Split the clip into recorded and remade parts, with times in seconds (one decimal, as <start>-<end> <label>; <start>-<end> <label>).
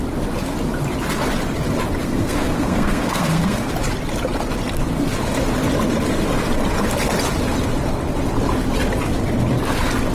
0.0-2.0 recorded; 2.0-3.7 remade; 3.7-10.1 recorded